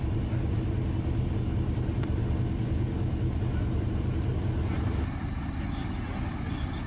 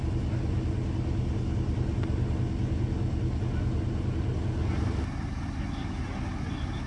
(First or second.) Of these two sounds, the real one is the second